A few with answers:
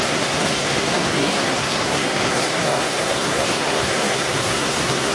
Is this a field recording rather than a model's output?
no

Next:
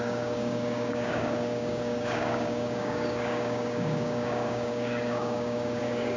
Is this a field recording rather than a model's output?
no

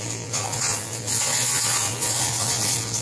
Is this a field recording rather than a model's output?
no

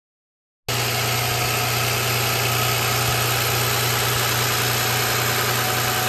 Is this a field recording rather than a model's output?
yes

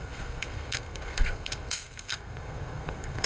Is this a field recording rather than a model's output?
no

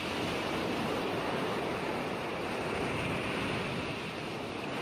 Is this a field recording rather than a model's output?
yes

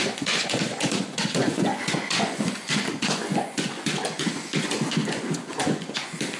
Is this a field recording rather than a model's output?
no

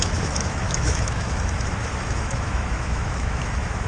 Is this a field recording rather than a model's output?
no